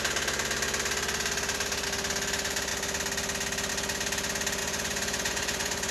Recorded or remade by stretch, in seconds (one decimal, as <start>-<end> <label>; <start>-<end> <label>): 0.0-4.6 recorded; 4.6-5.9 remade